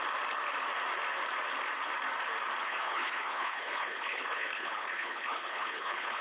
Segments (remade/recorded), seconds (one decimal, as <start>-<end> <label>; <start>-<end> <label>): 0.0-2.6 recorded; 2.6-6.2 remade